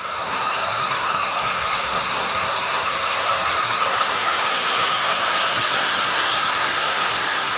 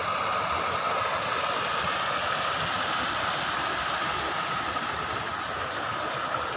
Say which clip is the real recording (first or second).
second